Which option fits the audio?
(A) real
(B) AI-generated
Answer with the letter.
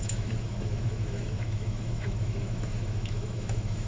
B